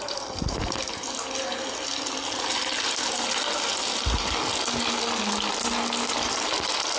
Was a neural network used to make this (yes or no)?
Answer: no